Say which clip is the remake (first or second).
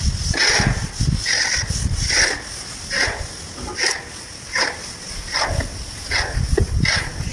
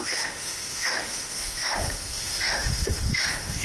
second